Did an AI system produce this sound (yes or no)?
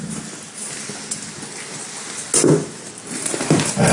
no